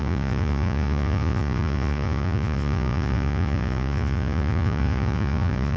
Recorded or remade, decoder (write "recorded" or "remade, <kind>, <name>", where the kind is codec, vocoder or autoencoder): remade, vocoder, Vocos